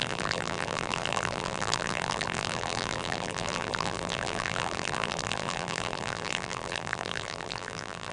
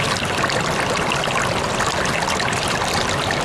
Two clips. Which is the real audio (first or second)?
second